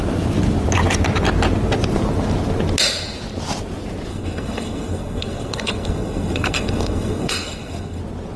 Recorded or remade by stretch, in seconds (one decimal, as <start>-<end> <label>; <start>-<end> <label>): 0.0-4.1 recorded; 4.1-8.0 remade; 8.0-8.4 recorded